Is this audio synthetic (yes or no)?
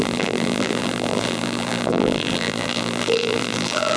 yes